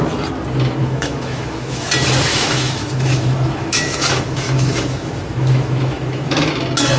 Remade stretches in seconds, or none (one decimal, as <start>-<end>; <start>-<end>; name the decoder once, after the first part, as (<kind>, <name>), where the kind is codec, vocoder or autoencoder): 0.8-1.9 (autoencoder, DAC-VAE); 2.3-6.5